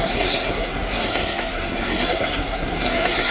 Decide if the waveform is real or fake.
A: fake